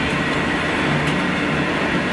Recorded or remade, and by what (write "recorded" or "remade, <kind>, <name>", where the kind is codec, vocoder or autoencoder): recorded